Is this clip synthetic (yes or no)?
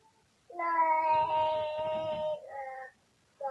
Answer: no